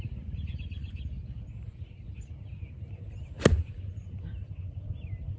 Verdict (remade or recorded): recorded